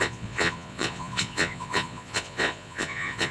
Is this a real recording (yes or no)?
no